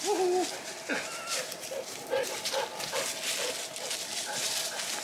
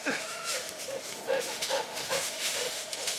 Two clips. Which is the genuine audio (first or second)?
first